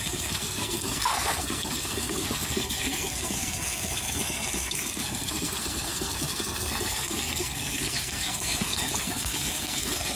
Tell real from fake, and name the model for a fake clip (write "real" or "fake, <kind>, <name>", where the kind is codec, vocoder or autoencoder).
fake, codec, SNAC